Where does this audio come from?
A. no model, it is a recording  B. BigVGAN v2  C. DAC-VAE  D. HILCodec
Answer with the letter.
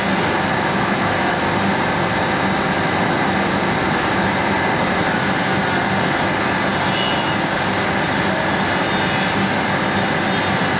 A